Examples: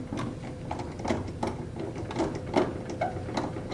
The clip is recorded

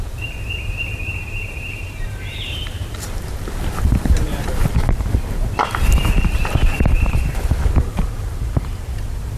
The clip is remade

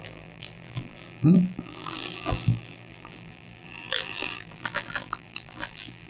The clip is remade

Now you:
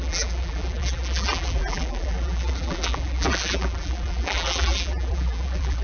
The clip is remade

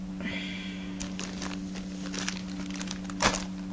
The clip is recorded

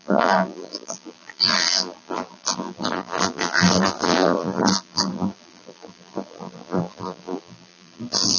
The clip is remade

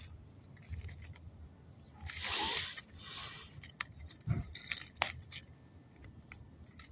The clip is recorded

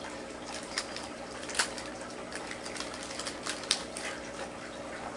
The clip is remade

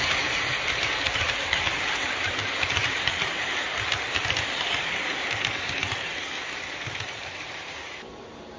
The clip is remade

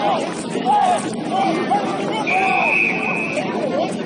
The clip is recorded